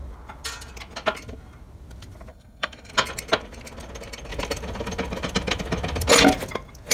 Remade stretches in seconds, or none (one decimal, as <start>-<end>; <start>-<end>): 2.3-2.9